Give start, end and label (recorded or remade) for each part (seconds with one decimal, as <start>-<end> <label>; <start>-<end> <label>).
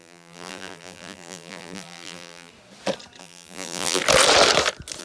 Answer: 0.0-2.5 remade; 2.5-3.2 recorded; 3.2-4.0 remade; 4.0-5.0 recorded